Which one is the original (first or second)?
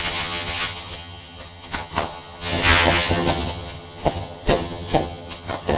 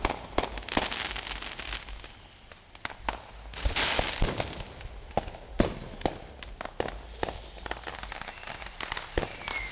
second